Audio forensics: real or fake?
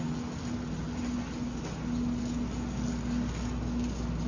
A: real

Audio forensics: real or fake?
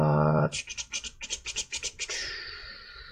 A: fake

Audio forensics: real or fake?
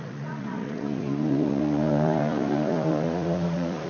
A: fake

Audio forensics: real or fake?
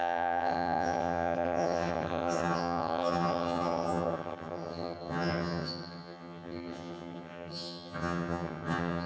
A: fake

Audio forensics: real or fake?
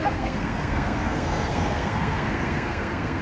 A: fake